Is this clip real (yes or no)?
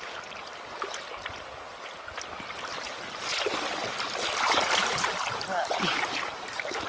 yes